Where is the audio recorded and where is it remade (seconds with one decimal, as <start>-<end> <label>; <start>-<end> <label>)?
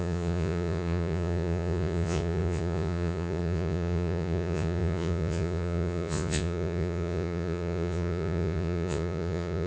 0.0-9.7 remade